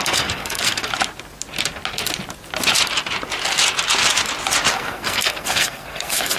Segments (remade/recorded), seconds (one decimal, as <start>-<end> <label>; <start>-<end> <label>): 0.0-0.9 remade; 0.9-4.7 recorded; 4.7-6.4 remade